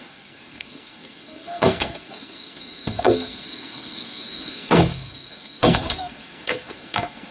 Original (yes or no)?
no